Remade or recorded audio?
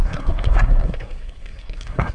remade